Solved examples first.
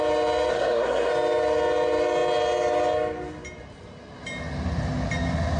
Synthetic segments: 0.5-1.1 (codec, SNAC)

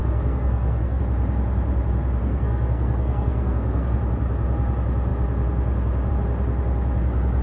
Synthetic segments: 0.0-1.0 (codec, SNAC); 2.2-4.0

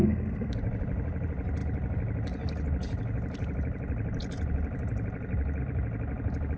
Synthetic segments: 0.0-0.5 (codec, SNAC)

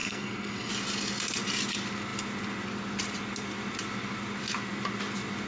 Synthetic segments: 0.0-0.7 (codec, SNAC)

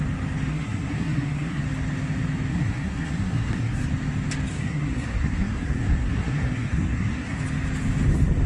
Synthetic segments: 0.5-1.6 (codec, SNAC); 2.5-3.9; 4.5-7.4